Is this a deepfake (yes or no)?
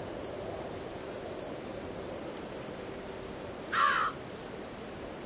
no